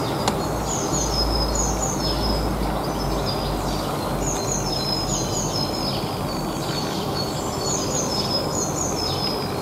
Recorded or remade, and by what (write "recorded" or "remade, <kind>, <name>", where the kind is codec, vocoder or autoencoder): recorded